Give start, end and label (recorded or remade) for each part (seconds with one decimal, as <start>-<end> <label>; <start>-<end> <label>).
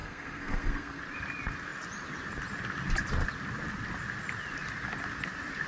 0.0-1.0 remade; 1.0-5.7 recorded